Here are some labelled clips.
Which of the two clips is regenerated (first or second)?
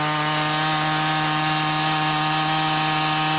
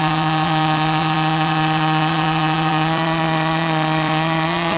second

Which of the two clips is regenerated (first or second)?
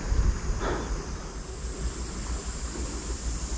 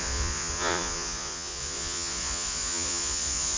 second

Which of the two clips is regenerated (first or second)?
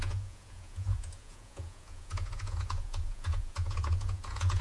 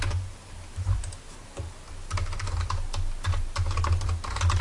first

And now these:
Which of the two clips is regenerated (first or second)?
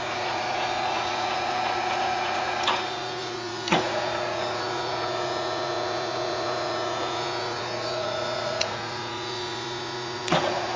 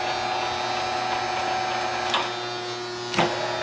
first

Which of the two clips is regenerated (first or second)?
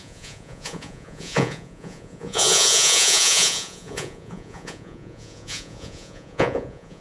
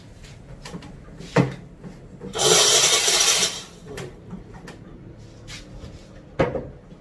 first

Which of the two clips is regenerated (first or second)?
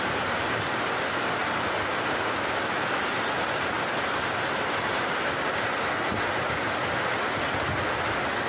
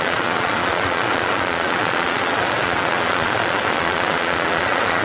second